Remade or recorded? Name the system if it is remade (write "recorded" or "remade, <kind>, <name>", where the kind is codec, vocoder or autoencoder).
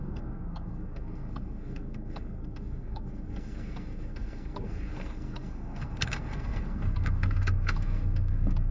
remade, codec, SNAC